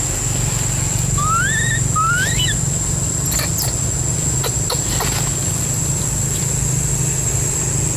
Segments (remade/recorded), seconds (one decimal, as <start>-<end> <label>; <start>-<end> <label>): 0.0-5.4 recorded; 5.4-7.6 remade; 7.6-8.0 recorded